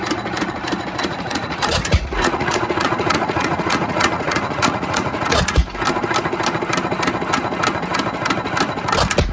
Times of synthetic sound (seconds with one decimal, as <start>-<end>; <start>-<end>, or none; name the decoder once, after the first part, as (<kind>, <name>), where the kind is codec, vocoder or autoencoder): 1.0-5.6 (vocoder, Vocos)